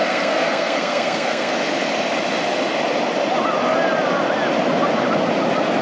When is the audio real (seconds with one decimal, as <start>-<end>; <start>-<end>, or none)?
1.5-5.8